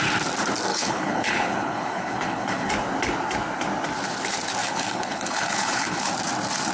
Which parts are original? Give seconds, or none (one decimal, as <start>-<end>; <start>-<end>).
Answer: 0.0-0.7; 2.7-4.6; 6.1-6.7